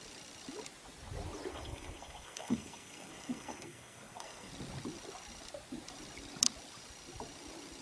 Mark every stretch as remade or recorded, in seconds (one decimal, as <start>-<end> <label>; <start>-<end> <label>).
0.0-1.5 recorded; 1.5-4.5 remade; 4.5-7.8 recorded